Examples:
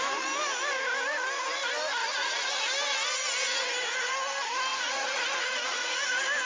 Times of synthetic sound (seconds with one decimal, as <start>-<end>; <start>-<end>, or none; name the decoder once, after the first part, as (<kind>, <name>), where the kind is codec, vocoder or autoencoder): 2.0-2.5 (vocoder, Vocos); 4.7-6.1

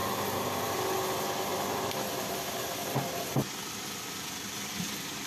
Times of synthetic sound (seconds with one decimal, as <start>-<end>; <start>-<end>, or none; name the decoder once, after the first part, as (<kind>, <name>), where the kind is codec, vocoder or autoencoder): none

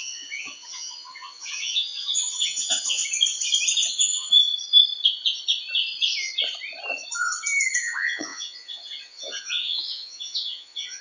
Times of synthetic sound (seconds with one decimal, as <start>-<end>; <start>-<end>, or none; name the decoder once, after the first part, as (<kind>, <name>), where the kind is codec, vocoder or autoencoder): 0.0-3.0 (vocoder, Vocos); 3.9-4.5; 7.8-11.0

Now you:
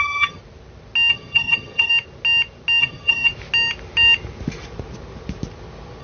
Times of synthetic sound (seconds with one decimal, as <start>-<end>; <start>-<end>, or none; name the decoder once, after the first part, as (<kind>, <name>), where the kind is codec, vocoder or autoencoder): 0.0-0.4 (vocoder, HiFi-GAN); 1.1-1.9; 2.8-3.3

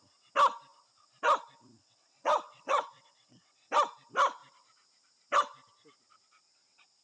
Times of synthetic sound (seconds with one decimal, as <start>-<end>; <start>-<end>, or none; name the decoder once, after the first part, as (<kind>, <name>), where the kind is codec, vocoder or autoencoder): 1.8-3.7 (vocoder, WaveNeXt)

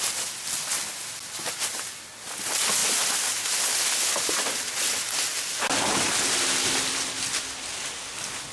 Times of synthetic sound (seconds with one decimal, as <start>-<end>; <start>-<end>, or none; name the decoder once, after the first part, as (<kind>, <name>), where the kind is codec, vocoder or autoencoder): none

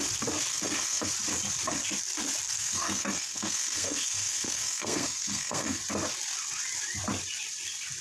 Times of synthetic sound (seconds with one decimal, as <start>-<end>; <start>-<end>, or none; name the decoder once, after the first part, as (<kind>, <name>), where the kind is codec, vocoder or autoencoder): 0.5-1.1 (codec, SNAC); 2.5-5.8

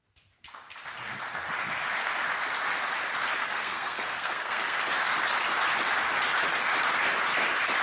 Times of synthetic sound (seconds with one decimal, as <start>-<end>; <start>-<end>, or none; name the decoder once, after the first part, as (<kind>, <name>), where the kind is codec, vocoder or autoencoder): 3.4-4.8 (codec, SNAC)